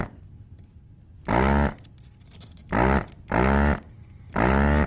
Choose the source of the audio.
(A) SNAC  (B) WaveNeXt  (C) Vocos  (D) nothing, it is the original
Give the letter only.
D